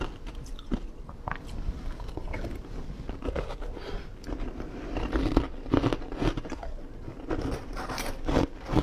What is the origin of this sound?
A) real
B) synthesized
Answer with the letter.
A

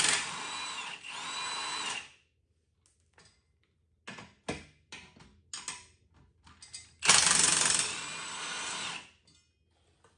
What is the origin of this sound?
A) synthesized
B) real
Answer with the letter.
B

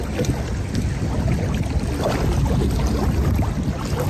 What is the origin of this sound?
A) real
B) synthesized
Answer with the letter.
A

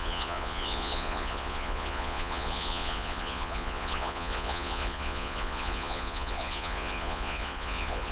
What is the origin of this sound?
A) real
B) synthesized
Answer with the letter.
B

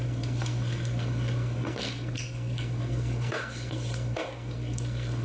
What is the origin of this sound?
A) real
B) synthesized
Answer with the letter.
B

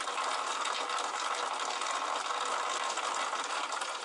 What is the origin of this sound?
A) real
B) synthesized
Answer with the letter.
A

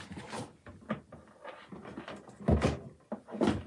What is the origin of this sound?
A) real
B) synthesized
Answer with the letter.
A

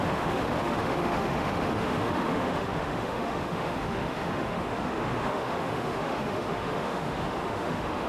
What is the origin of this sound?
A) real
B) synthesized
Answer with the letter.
B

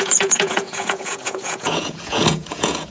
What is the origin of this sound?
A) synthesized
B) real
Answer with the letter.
A